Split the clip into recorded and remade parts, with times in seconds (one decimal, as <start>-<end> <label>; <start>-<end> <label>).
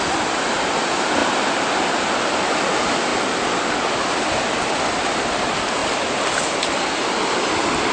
0.0-7.9 recorded